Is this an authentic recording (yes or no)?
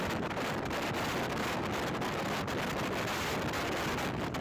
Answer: yes